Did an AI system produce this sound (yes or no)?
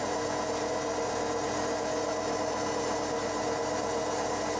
no